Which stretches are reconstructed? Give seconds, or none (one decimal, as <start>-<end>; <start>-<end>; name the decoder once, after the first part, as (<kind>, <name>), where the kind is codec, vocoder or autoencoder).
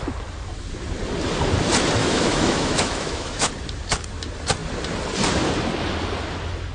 2.0-3.5 (autoencoder, DAC-VAE)